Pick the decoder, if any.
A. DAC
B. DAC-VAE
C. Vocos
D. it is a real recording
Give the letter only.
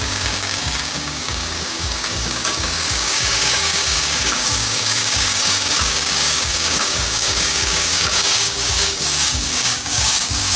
A